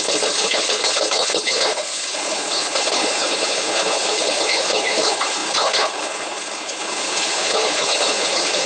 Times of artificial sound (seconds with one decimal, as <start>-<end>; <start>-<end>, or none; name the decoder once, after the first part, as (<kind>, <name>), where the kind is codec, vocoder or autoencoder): 0.0-8.7 (codec, HILCodec)